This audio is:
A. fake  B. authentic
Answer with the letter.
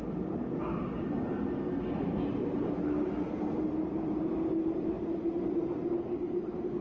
B